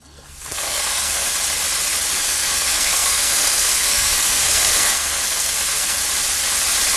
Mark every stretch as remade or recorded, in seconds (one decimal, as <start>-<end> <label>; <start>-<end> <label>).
0.0-1.3 remade; 1.3-2.1 recorded; 2.1-6.0 remade; 6.0-7.0 recorded